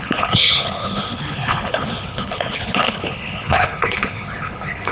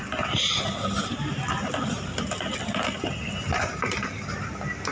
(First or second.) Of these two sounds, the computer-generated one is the first